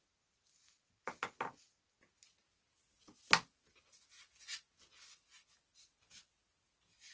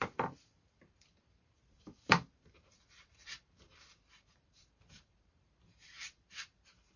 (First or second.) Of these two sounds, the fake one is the second